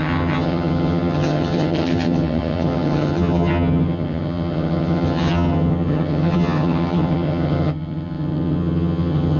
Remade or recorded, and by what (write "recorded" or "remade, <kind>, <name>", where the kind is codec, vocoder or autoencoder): remade, vocoder, HiFi-GAN